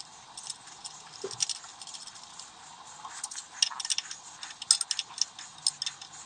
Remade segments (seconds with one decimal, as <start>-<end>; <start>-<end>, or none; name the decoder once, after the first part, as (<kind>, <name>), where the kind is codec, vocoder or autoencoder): none